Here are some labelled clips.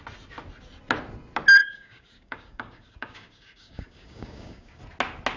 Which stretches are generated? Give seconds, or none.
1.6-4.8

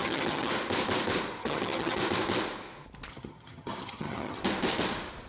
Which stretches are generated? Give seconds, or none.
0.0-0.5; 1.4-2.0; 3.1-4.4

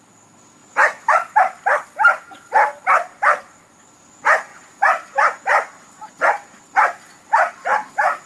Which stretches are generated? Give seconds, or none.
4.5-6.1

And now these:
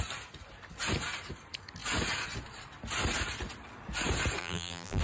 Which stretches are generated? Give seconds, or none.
4.4-5.0

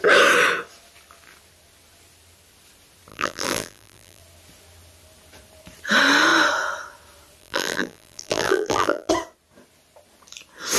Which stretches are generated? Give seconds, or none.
3.1-4.2; 7.4-9.1